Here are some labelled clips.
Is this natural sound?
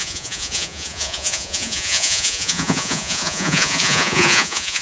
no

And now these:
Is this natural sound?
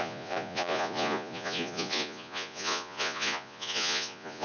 no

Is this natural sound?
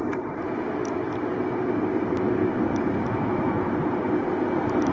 yes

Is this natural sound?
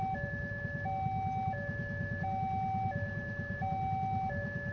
yes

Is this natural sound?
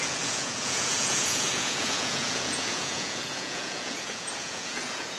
no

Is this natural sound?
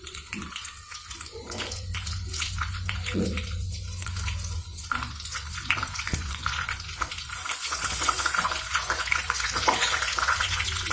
no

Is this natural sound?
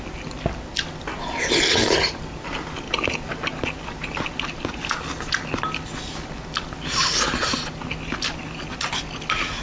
yes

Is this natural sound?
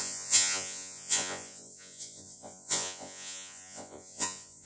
no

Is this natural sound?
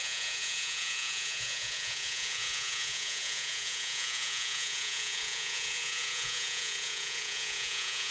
no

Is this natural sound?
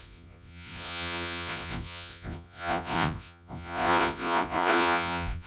no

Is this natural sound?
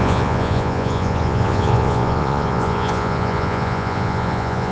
no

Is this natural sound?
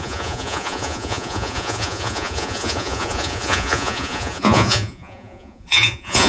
no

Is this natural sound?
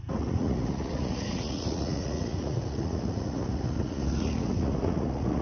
no